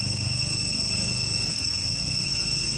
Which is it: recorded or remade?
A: remade